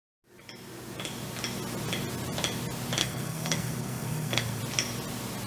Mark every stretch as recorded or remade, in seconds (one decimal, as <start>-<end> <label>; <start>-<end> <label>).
0.0-3.0 recorded; 3.0-4.6 remade; 4.6-5.5 recorded